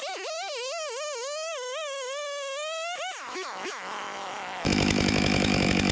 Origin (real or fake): fake